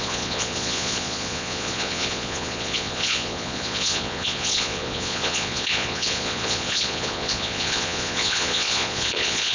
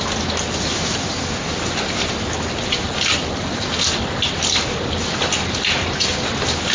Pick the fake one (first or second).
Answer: first